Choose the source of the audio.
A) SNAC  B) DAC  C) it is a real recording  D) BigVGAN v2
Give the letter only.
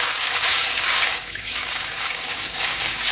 B